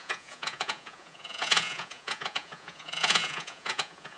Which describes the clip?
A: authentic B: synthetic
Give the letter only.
B